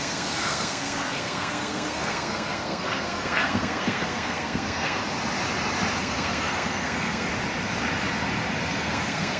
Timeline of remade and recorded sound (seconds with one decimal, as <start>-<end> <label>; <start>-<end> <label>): 0.0-5.0 remade; 5.0-6.0 recorded; 6.0-7.3 remade; 7.3-8.7 recorded; 8.7-9.4 remade